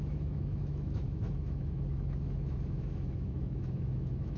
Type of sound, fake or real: fake